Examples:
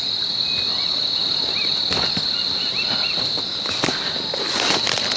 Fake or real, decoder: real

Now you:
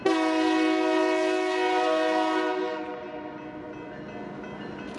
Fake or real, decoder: real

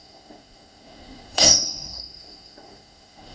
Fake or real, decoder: fake, codec, SNAC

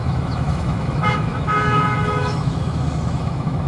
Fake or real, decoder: fake, autoencoder, DAC-VAE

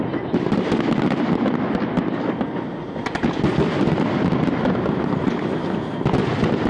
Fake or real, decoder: real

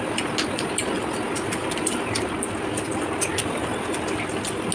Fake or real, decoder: real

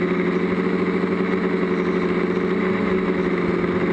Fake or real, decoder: real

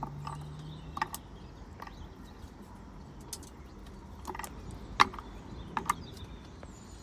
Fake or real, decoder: real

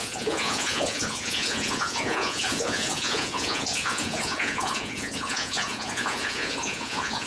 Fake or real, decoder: fake, vocoder, Vocos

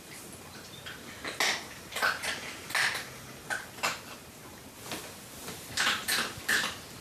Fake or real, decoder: real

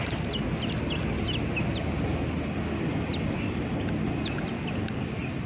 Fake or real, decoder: real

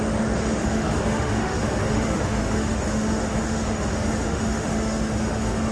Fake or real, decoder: fake, autoencoder, DAC-VAE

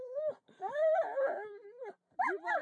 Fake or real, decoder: real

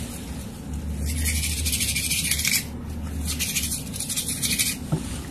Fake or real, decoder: real